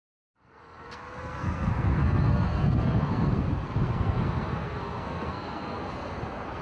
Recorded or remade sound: remade